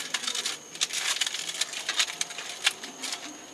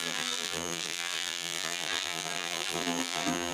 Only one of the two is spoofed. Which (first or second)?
second